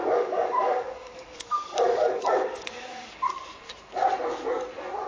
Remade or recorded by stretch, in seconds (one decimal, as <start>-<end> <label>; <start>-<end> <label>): 0.0-3.1 remade; 3.1-5.1 recorded